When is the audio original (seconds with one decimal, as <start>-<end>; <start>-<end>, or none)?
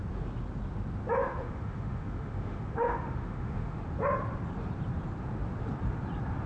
0.0-1.2; 3.9-6.5